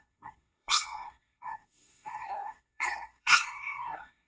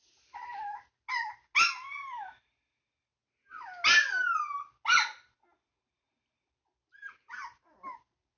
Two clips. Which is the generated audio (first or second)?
first